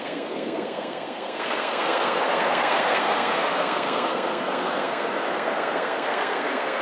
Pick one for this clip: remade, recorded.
remade